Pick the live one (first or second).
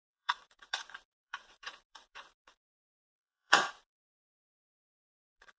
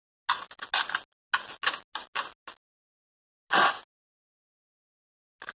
second